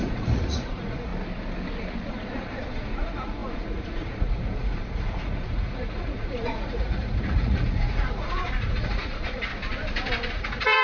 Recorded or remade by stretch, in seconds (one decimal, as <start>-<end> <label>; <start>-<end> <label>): 0.0-1.1 remade; 1.1-2.1 recorded; 2.1-9.5 remade; 9.5-10.3 recorded; 10.3-10.8 remade